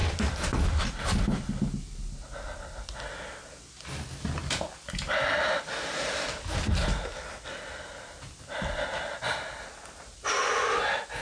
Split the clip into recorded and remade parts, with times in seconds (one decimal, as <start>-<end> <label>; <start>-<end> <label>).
0.0-11.2 recorded